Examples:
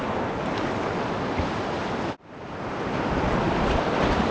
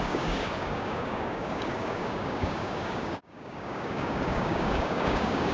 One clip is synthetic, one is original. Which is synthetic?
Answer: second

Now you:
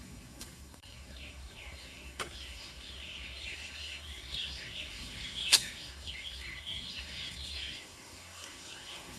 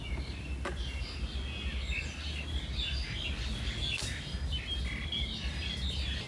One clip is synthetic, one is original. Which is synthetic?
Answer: first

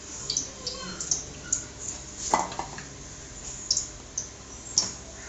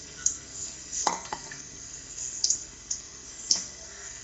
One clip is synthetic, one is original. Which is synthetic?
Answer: second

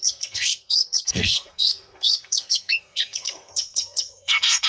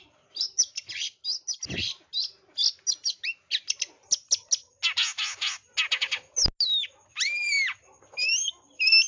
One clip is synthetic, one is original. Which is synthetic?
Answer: first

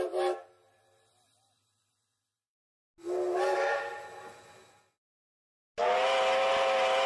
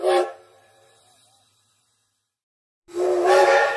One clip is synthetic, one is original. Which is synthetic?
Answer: second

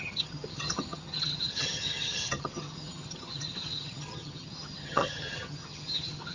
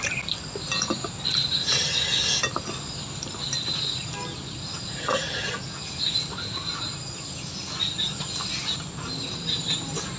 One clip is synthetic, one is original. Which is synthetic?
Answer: first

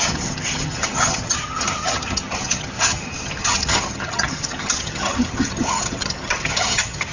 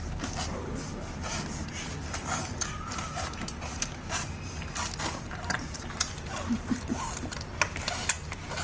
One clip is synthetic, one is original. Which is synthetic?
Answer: first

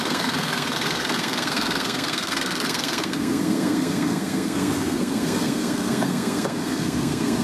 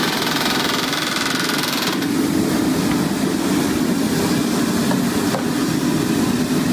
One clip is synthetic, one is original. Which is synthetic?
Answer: first